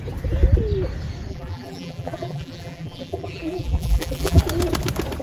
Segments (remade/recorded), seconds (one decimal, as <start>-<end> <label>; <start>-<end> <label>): 0.0-1.3 recorded; 1.3-4.4 remade; 4.4-5.2 recorded